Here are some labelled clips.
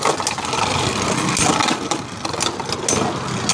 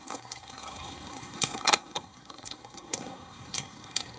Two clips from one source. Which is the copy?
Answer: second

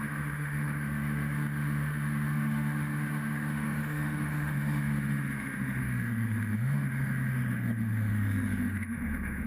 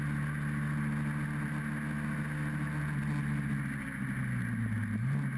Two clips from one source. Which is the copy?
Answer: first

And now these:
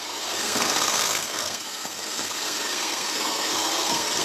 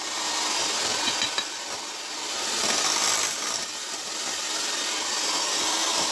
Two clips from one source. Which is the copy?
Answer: first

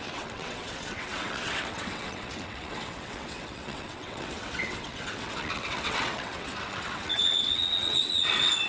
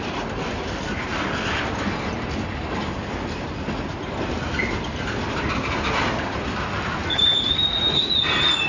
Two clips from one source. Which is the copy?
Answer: first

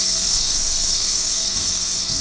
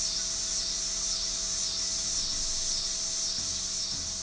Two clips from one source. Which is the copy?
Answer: first